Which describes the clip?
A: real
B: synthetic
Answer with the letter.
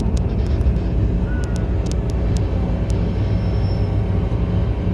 A